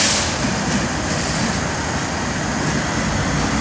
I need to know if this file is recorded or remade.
recorded